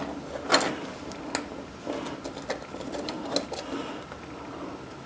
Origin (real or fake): real